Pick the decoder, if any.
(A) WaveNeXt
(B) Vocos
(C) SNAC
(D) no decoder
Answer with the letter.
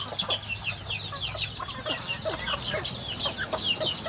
D